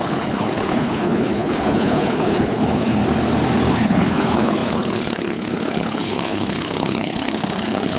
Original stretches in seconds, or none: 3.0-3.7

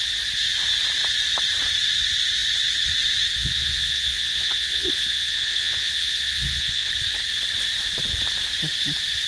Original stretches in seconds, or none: 0.0-3.4; 6.9-9.3

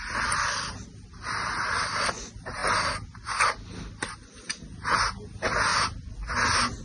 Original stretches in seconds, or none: 0.0-6.8

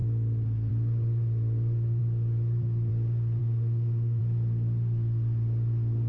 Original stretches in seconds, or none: 0.0-3.4; 4.2-6.1

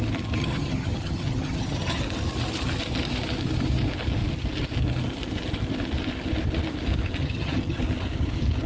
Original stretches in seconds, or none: 0.0-0.4; 2.0-7.2; 7.8-8.7

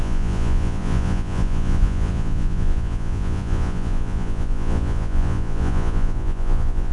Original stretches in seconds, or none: none

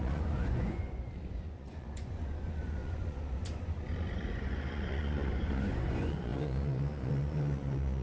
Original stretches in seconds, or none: none

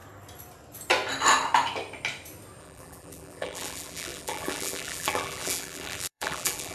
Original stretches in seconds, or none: 0.0-2.6